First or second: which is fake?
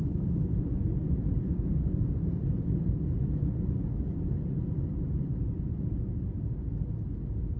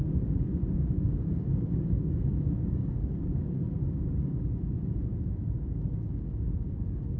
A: second